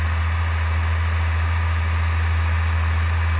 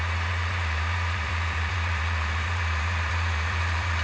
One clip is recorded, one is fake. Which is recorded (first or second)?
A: first